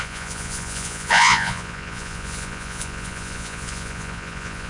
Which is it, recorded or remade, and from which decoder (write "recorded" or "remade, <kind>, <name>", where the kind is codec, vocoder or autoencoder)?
remade, vocoder, Vocos